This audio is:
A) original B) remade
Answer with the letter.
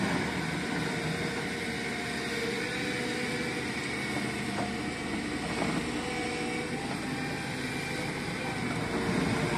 A